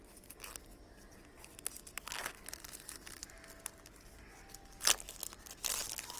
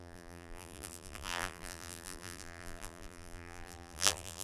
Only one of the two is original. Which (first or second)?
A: first